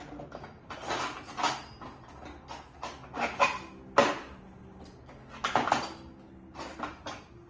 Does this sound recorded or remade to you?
recorded